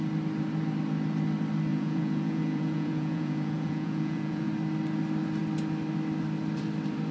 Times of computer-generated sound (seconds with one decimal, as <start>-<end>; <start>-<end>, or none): 1.7-4.5